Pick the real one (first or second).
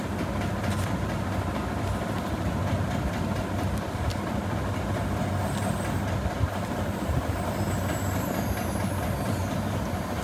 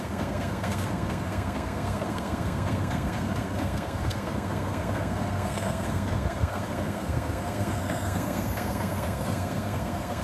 first